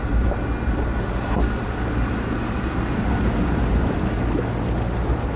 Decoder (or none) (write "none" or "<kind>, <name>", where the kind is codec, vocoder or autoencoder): none